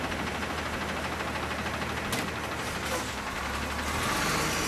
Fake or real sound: real